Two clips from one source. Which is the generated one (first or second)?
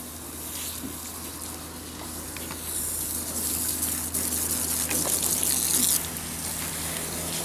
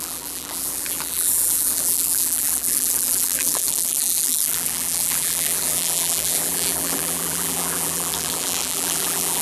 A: second